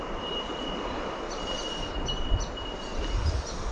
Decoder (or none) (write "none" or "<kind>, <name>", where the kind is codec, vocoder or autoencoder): none